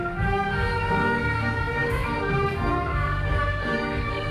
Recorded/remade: remade